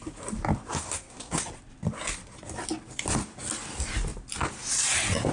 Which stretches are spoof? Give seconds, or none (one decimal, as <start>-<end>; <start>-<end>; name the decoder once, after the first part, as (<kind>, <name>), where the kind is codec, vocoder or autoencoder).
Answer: 0.7-1.4 (codec, SNAC)